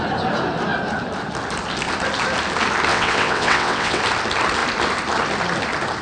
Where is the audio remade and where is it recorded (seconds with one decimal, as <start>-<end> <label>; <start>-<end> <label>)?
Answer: 0.0-2.9 recorded; 2.9-4.0 remade; 4.0-6.0 recorded